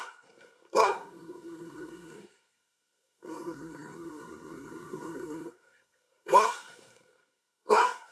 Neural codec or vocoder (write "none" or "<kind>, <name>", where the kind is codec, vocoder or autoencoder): codec, SNAC